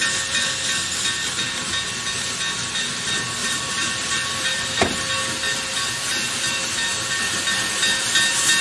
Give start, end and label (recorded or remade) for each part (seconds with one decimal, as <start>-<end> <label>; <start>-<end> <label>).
0.0-3.4 recorded; 3.4-4.8 remade; 4.8-8.6 recorded

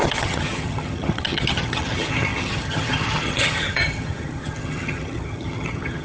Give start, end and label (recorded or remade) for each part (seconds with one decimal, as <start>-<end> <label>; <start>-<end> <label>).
0.0-6.0 remade